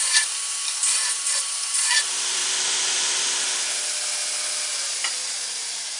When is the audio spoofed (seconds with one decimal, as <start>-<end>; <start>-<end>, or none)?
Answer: 0.0-2.4; 4.7-6.0